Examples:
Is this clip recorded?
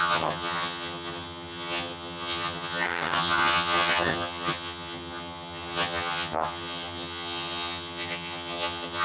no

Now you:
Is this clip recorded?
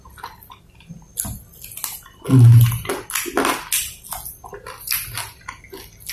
yes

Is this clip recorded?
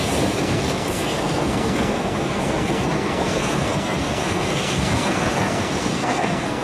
no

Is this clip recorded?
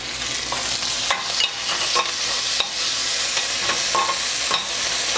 yes